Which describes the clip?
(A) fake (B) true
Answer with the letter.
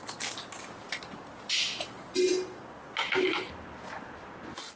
B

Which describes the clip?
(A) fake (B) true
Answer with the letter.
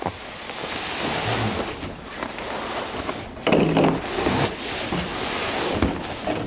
B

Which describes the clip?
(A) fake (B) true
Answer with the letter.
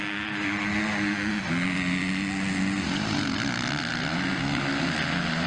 B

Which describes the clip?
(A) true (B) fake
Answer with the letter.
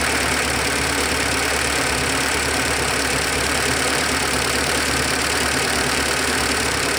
B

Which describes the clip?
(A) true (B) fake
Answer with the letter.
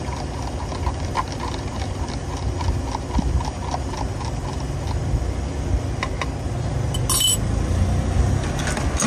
A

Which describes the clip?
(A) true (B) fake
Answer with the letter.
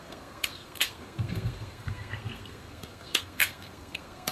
B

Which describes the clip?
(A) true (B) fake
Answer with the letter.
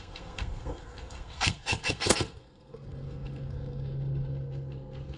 B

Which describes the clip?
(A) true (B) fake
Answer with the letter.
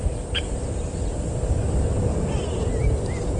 A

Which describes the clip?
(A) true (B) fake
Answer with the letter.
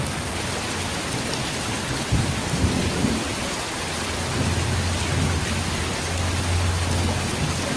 A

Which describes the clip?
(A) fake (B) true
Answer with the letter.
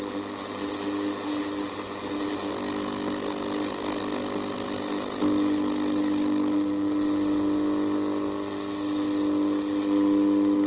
B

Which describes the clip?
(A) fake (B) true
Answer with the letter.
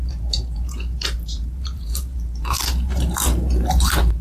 A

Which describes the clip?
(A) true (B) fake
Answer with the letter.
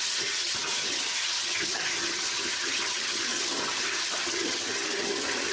B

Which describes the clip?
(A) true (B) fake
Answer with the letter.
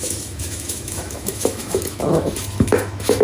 B